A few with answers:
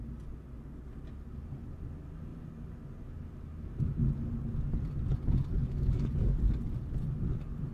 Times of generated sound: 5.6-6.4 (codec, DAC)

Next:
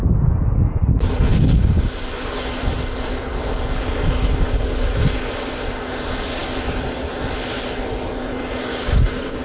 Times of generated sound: 8.7-9.4 (codec, DAC)

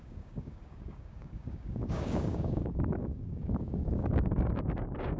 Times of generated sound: 0.0-5.2 (codec, DAC)

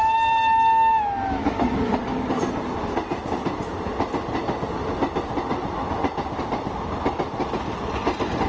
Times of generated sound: 1.4-2.4 (codec, DAC)